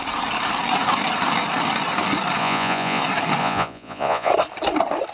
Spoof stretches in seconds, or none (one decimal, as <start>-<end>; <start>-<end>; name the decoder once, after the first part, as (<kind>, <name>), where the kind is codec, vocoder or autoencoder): 2.4-3.0 (vocoder, Vocos); 3.4-4.3